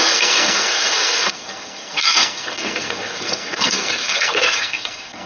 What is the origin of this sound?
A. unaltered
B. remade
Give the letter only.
B